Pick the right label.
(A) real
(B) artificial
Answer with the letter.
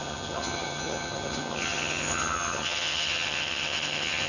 B